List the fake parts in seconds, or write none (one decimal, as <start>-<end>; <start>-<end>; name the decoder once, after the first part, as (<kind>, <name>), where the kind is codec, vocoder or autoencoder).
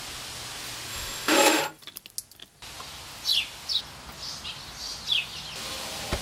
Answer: 0.9-1.6 (autoencoder, DAC-VAE)